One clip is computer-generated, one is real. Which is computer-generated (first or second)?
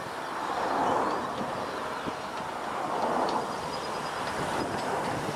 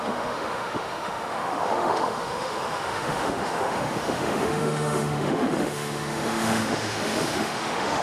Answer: second